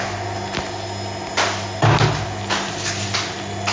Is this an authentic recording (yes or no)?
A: yes